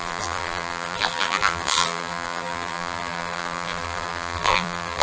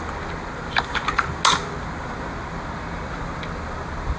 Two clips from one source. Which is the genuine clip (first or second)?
second